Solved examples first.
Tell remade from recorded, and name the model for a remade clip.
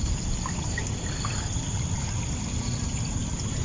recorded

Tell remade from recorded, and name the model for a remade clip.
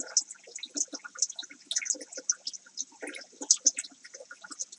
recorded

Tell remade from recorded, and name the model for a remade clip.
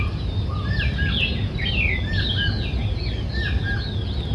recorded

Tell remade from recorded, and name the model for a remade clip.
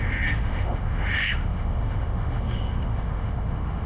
remade, autoencoder, DAC-VAE